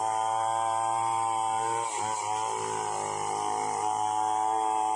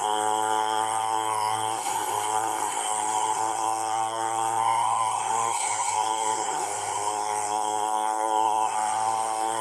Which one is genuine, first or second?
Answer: first